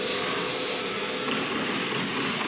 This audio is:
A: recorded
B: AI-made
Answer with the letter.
A